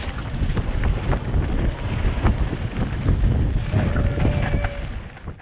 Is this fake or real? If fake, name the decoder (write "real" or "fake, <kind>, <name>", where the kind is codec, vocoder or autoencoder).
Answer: real